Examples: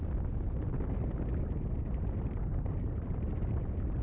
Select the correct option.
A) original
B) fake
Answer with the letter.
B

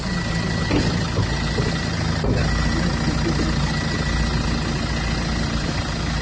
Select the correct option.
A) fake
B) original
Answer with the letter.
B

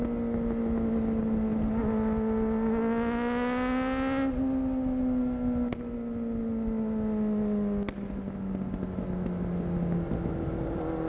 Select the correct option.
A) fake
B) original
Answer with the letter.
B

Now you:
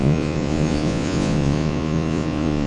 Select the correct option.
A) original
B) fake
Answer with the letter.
B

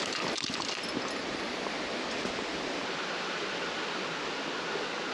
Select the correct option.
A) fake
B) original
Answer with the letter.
B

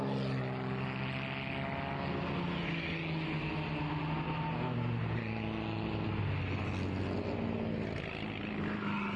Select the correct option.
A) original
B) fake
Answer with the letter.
A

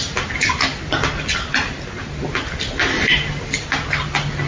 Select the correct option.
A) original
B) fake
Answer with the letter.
A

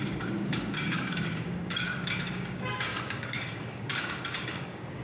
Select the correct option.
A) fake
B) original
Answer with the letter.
A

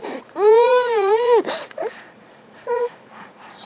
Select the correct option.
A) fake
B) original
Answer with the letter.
A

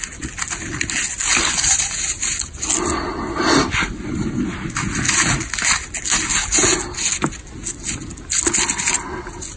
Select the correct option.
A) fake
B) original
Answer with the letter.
B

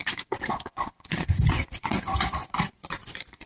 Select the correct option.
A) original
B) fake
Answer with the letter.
B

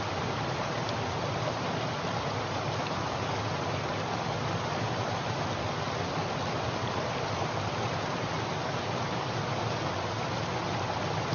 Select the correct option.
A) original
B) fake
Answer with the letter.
A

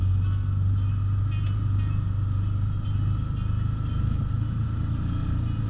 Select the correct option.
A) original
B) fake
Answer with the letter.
A